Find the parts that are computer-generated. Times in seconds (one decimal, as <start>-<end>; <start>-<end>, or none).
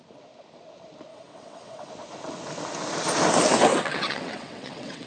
1.1-1.9; 3.7-5.1